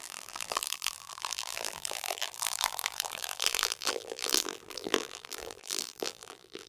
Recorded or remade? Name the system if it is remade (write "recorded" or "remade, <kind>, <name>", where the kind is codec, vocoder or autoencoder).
remade, vocoder, BigVGAN v2